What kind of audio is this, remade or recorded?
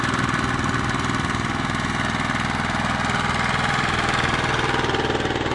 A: recorded